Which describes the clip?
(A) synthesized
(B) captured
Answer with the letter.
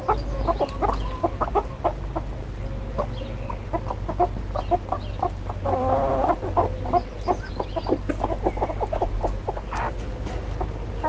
B